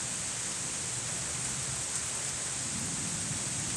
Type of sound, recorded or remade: recorded